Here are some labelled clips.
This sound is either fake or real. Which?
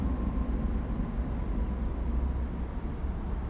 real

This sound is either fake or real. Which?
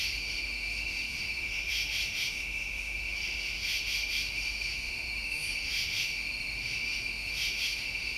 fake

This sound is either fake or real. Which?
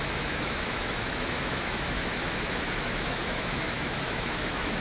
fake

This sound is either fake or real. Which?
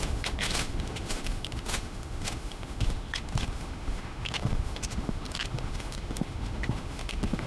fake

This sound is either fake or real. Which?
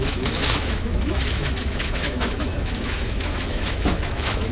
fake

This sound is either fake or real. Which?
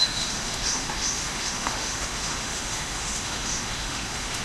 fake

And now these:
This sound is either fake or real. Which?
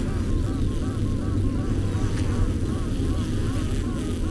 real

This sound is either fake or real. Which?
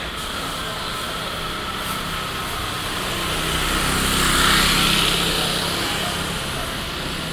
real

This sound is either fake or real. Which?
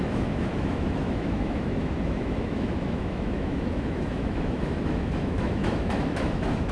fake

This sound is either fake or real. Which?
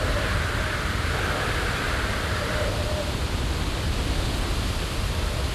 real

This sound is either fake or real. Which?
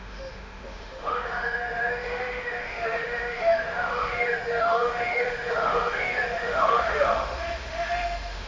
fake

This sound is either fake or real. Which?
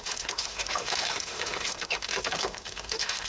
fake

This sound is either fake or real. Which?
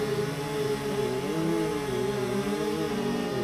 real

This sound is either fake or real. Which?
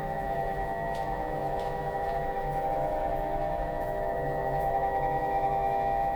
fake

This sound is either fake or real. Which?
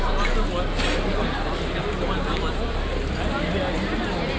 real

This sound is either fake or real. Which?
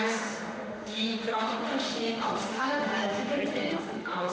fake